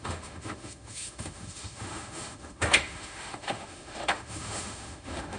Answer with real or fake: fake